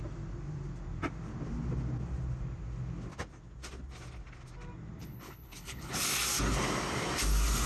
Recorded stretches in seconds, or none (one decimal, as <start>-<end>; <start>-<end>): 0.0-5.0; 5.9-7.7